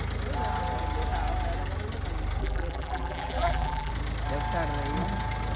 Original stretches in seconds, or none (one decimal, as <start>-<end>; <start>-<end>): 0.0-2.4; 3.9-5.6